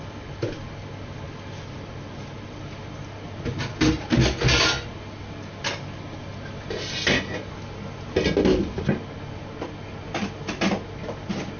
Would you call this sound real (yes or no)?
yes